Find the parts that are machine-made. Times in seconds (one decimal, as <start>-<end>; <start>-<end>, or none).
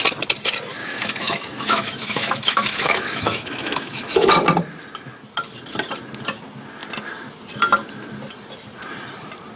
0.8-4.3